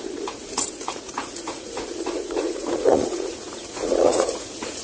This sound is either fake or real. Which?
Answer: fake